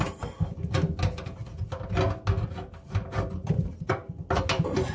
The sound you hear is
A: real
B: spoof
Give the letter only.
A